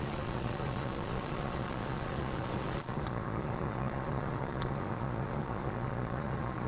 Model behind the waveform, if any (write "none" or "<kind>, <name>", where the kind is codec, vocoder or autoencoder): vocoder, Vocos